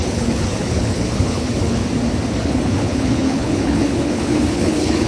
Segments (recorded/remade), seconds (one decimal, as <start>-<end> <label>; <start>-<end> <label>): 0.0-1.8 remade; 1.8-2.4 recorded; 2.4-5.1 remade